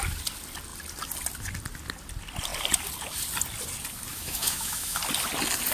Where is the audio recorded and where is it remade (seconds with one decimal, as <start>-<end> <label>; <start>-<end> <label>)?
0.0-4.1 recorded; 4.1-5.0 remade; 5.0-5.7 recorded